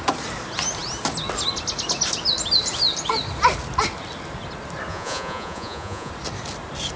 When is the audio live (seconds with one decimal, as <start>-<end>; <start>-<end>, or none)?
0.0-4.9; 6.1-7.0